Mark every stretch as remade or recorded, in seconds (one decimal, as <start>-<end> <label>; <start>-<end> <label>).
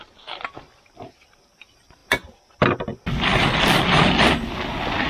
0.0-5.1 recorded